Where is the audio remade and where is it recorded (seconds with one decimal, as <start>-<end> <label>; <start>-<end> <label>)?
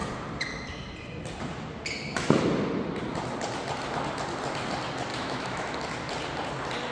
0.0-5.1 recorded; 5.1-5.7 remade; 5.7-6.9 recorded